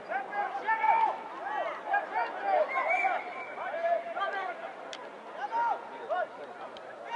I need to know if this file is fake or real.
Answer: real